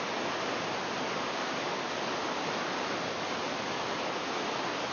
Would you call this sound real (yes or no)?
yes